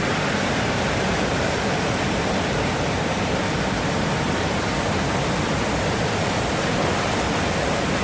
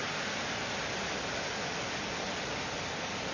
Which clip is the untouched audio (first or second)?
second